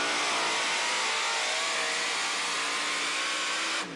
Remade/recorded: recorded